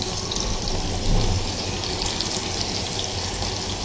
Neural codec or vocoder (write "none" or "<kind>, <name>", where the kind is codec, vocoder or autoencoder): none